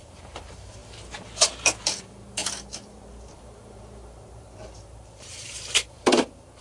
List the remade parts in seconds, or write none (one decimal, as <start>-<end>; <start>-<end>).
0.0-6.6